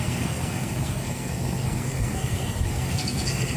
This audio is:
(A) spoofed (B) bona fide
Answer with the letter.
A